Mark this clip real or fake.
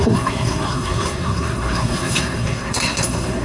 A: fake